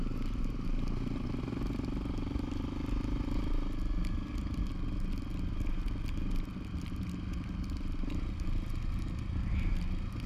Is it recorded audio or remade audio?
recorded